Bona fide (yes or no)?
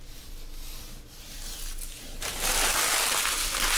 yes